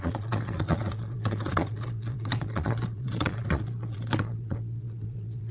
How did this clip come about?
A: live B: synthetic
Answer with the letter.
B